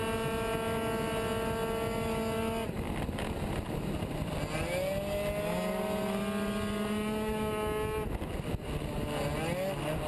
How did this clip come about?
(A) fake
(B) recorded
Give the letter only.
B